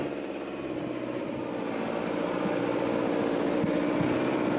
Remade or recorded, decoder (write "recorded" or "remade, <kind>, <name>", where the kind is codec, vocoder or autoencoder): recorded